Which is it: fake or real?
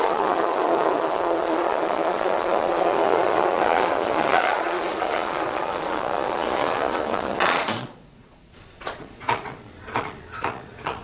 fake